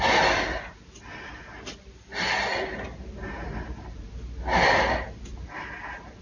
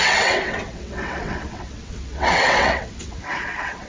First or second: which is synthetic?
second